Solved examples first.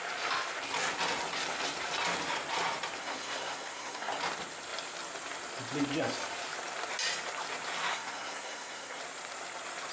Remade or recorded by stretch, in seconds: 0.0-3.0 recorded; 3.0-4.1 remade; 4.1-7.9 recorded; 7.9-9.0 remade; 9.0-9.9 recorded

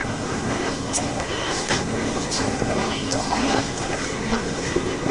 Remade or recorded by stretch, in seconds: 0.0-5.1 remade

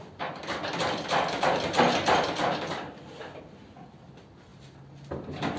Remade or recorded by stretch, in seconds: 0.0-5.6 recorded

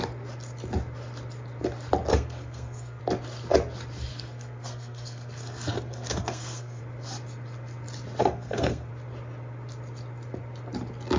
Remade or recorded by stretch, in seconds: 0.0-2.1 recorded; 2.1-3.0 remade; 3.0-4.1 recorded; 4.1-6.8 remade; 6.8-8.2 recorded; 8.2-8.9 remade; 8.9-11.2 recorded

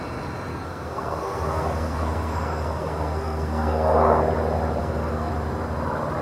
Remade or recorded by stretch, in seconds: 0.0-0.5 recorded; 0.5-4.2 remade; 4.2-4.8 recorded; 4.8-5.3 remade; 5.3-6.2 recorded

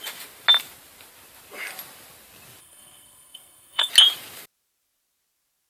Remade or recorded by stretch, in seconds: 0.0-2.6 recorded; 2.6-3.9 remade; 3.9-5.7 recorded

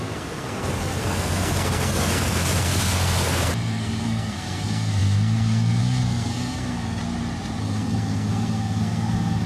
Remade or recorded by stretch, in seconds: 0.0-7.0 remade; 7.0-7.6 recorded; 7.6-9.5 remade